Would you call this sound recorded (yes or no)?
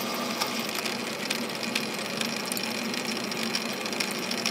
yes